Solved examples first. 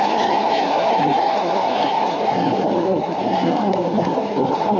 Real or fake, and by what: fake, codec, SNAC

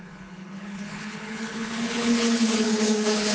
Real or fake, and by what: fake, codec, HILCodec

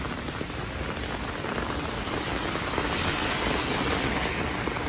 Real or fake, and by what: real